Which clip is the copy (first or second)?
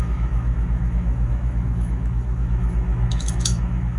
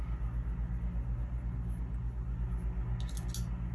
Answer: first